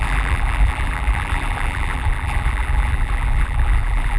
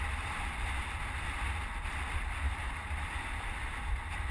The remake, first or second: first